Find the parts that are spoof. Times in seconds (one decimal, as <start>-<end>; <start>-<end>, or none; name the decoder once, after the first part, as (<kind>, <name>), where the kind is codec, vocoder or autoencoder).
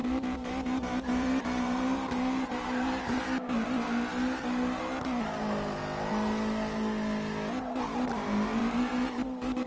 0.0-3.2 (vocoder, BigVGAN v2); 8.6-9.7